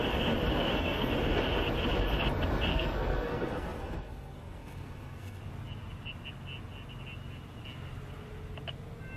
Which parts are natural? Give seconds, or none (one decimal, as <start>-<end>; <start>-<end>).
0.0-0.5; 1.1-2.7; 5.4-9.2